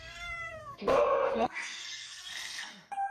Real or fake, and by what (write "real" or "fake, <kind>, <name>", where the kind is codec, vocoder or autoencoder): fake, codec, SNAC